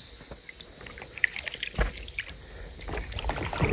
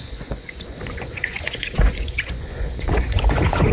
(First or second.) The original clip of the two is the first